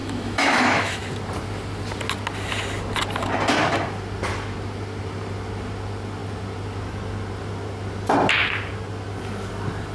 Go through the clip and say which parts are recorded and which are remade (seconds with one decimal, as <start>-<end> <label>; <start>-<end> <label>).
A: 0.0-1.0 remade; 1.0-9.9 recorded